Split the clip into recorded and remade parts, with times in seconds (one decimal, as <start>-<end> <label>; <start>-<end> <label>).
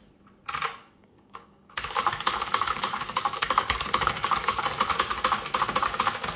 0.0-0.8 recorded; 0.8-4.6 remade; 4.6-6.4 recorded